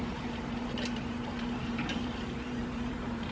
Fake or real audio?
fake